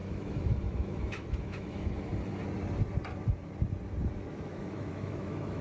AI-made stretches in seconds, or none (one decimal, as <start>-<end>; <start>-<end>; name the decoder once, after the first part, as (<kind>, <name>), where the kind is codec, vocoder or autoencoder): 0.0-2.1 (autoencoder, DAC-VAE); 4.3-5.6